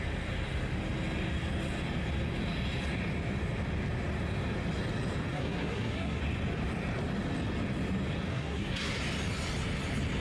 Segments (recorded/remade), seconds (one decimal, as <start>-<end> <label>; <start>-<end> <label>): 0.0-5.3 recorded; 5.3-6.2 remade; 6.2-8.3 recorded; 8.3-9.0 remade; 9.0-10.2 recorded